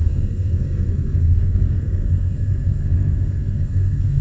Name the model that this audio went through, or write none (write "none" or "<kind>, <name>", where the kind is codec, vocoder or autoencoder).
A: codec, SNAC